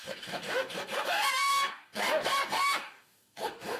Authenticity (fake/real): fake